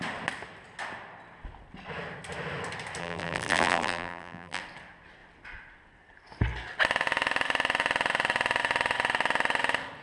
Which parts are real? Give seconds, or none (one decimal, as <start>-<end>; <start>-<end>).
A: 0.0-3.0; 4.6-10.0